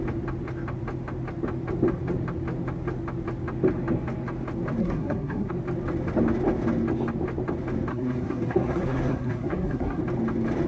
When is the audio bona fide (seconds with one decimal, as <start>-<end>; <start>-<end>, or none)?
0.0-4.8; 5.5-7.9; 10.0-10.7